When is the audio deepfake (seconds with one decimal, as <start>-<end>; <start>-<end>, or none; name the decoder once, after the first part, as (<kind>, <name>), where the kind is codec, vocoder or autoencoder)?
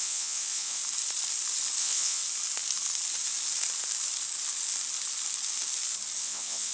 0.0-0.8 (vocoder, WaveNeXt); 1.8-2.2; 6.2-6.7